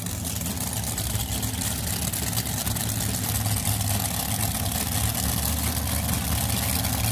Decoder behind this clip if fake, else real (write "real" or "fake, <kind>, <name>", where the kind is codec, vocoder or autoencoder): real